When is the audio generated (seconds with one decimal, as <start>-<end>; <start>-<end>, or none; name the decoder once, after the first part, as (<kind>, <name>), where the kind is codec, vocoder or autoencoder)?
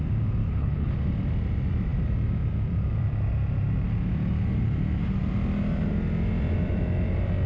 0.4-0.9 (codec, HILCodec)